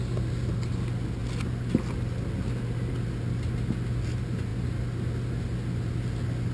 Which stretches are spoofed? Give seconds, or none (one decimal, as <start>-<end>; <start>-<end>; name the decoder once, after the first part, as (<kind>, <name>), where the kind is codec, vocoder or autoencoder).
none